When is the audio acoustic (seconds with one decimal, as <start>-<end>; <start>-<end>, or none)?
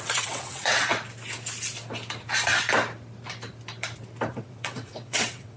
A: 0.9-4.3